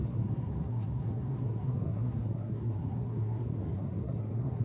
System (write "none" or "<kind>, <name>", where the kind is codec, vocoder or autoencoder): codec, SNAC